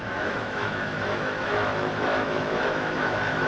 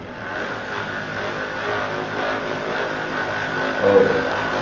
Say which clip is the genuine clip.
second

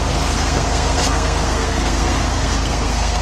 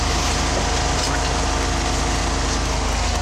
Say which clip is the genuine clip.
second